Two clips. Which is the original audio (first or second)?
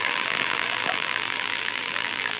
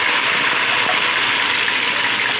second